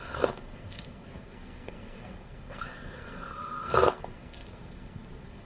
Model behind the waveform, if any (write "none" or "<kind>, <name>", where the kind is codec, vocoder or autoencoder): codec, SNAC